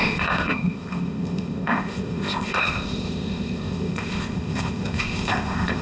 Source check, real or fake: fake